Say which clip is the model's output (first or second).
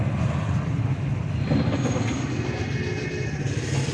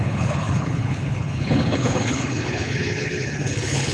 second